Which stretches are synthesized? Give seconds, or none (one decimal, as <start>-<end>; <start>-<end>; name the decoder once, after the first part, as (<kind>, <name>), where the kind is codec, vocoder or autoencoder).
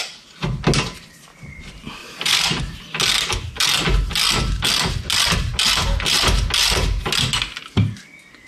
2.0-2.6 (vocoder, BigVGAN v2)